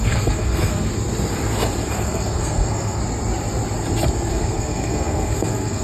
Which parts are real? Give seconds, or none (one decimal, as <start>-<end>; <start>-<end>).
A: 0.9-1.9; 3.0-4.3

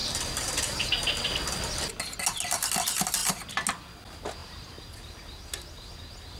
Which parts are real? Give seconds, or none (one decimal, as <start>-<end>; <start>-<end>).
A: 0.9-4.4; 5.9-6.4

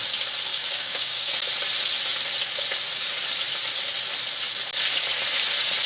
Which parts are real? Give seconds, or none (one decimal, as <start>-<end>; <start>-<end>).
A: 0.0-0.5; 1.3-5.9

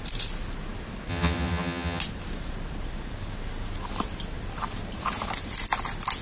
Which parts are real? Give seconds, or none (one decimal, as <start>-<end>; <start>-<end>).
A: 0.0-1.1; 2.0-6.2

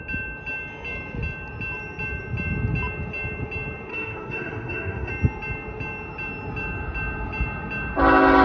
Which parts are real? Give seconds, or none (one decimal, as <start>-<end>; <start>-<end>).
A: 0.0-3.9; 5.1-8.4